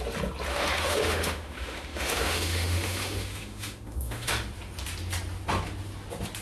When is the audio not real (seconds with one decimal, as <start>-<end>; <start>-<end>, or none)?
0.5-4.3